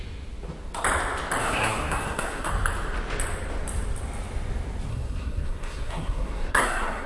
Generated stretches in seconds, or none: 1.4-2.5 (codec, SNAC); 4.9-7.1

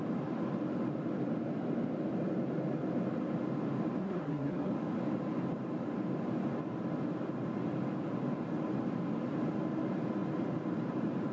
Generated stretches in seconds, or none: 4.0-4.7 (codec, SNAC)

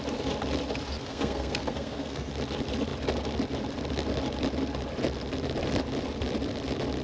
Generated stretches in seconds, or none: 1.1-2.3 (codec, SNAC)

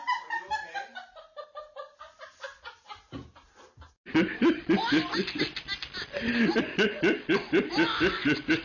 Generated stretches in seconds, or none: none